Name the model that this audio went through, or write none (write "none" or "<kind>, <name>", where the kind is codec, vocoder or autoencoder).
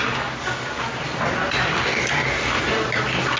none